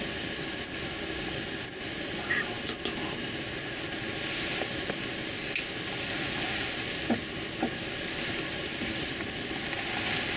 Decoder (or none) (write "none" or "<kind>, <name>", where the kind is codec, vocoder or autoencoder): none